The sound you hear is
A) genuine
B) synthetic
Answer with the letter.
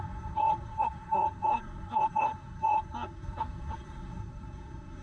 B